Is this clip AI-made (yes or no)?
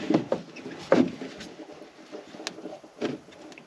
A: no